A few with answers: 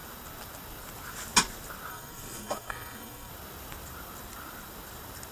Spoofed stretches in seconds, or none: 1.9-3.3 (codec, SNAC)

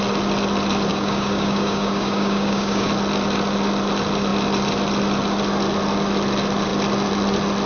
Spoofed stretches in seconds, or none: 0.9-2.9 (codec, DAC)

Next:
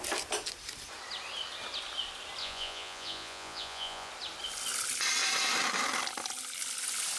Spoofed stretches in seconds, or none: 2.4-4.1 (vocoder, Vocos)

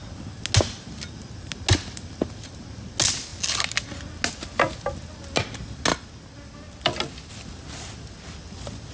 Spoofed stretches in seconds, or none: none

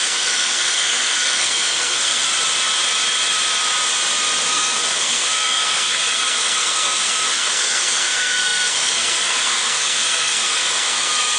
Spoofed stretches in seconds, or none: 0.0-2.3 (codec, SNAC); 4.5-11.4